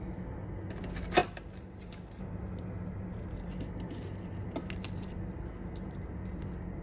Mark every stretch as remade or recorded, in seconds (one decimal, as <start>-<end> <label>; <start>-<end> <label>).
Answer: 0.0-6.8 recorded